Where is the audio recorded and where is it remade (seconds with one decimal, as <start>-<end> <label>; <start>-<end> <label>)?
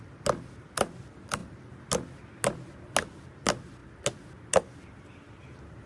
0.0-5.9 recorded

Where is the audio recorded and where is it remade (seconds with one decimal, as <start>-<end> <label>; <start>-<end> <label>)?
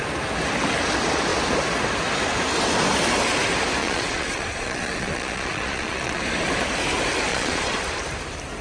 0.0-3.8 recorded; 3.8-6.2 remade; 6.2-7.3 recorded; 7.3-7.8 remade; 7.8-8.6 recorded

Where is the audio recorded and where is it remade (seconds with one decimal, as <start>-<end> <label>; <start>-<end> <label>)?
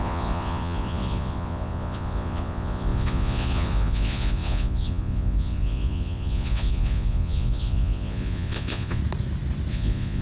0.0-9.0 remade; 9.0-9.7 recorded; 9.7-10.2 remade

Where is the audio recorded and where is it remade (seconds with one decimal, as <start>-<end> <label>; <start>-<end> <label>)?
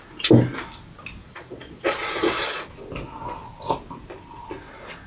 0.0-1.2 recorded; 1.2-2.7 remade; 2.7-5.1 recorded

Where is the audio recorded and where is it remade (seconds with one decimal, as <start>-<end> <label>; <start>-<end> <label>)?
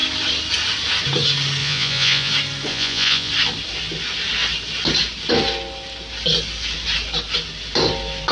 0.0-1.6 recorded; 1.6-2.3 remade; 2.3-2.7 recorded; 2.7-3.3 remade; 3.3-8.3 recorded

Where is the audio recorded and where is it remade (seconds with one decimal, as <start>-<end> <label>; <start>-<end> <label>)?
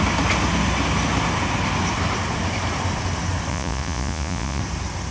0.0-3.5 recorded; 3.5-4.6 remade; 4.6-5.1 recorded